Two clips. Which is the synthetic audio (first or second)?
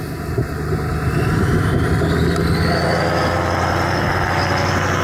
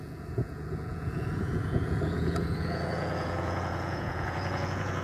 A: second